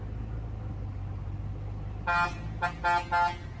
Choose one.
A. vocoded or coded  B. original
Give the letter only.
B